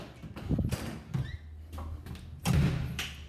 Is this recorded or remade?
recorded